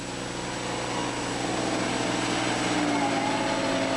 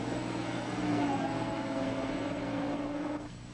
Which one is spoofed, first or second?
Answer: second